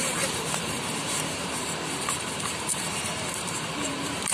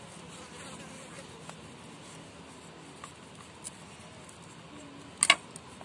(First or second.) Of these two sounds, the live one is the second